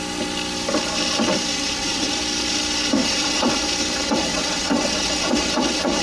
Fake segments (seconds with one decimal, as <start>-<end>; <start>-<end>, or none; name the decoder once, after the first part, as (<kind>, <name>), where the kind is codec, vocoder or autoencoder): 1.5-2.1 (vocoder, WaveNeXt); 3.0-3.6; 4.0-6.0